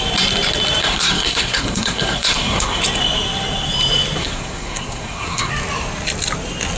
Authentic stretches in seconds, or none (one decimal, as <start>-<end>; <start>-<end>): 0.0-0.8; 2.8-4.2; 5.5-6.8